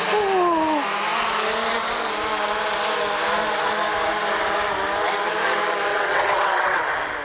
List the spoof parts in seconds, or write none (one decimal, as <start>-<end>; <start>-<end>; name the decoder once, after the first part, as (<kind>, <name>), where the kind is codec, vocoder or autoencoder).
5.9-6.8 (vocoder, WaveNeXt)